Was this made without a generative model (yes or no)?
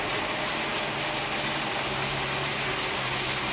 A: yes